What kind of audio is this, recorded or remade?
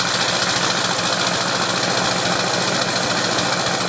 recorded